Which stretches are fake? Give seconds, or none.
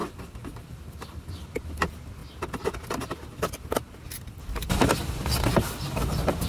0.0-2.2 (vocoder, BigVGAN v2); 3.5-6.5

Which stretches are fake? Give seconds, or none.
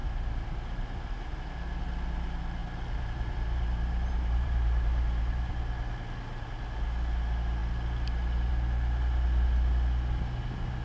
2.6-5.6 (vocoder, BigVGAN v2)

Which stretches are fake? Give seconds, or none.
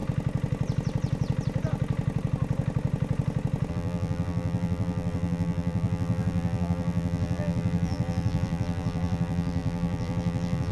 3.7-10.7 (vocoder, BigVGAN v2)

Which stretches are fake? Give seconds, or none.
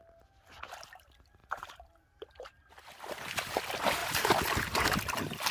1.4-2.7 (vocoder, BigVGAN v2); 4.0-5.0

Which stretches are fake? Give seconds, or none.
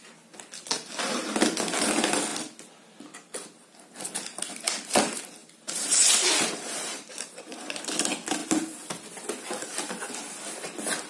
5.4-7.9 (vocoder, BigVGAN v2)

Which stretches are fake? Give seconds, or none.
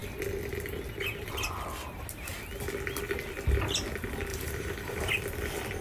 4.3-5.1 (vocoder, BigVGAN v2)